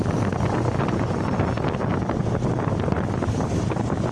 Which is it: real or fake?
real